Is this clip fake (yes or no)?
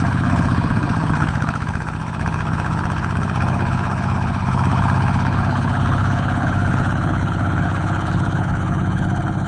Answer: yes